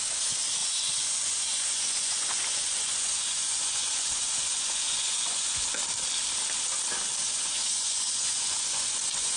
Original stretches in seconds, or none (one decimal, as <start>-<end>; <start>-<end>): 0.0-0.6; 5.6-7.2